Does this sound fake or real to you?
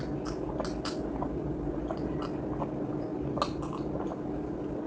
real